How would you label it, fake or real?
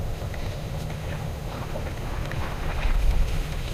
fake